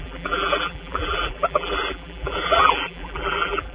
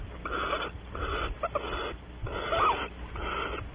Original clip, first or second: second